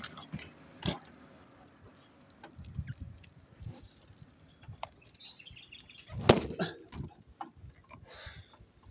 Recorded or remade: recorded